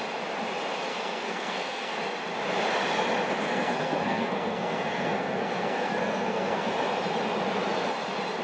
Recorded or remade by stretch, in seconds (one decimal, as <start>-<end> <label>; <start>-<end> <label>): 0.0-0.9 recorded; 0.9-2.0 remade; 2.0-3.4 recorded; 3.4-6.7 remade; 6.7-8.4 recorded